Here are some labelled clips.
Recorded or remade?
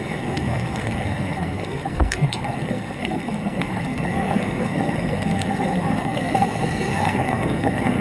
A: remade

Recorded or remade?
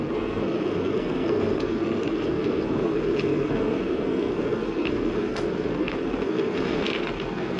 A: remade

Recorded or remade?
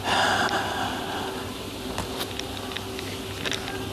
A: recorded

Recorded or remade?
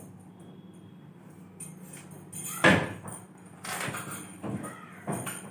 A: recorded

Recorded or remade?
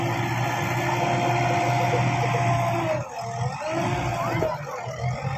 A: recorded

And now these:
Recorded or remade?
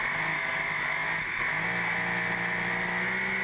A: recorded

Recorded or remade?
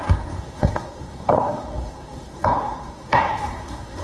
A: remade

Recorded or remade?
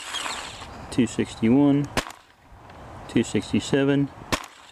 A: recorded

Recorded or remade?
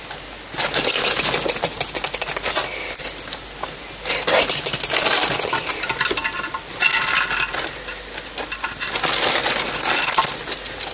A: recorded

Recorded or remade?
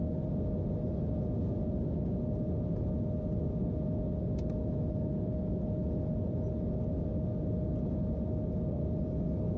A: recorded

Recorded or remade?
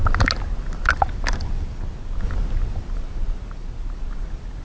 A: recorded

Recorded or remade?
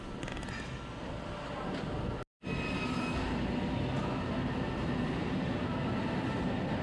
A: recorded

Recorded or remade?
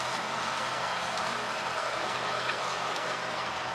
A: remade